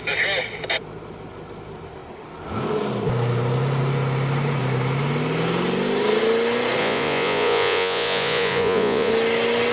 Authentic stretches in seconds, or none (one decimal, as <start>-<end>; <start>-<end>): 0.0-6.8; 9.1-9.7